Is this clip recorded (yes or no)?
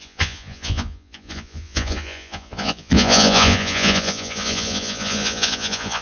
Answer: no